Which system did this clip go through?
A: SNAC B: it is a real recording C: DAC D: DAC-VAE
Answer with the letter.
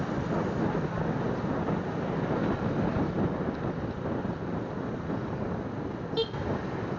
B